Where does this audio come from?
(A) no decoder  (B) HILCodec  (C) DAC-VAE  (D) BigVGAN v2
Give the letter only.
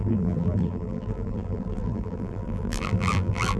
D